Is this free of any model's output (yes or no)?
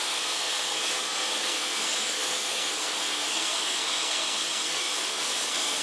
no